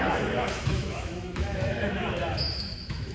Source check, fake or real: fake